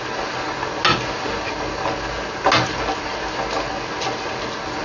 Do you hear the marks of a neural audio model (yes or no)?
no